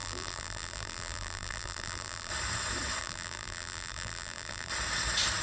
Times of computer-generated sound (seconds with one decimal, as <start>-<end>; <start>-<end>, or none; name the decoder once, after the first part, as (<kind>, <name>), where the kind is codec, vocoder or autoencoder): 0.0-2.3 (vocoder, BigVGAN v2); 3.0-4.7